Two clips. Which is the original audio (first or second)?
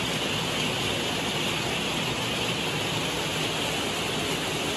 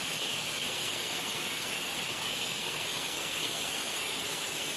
first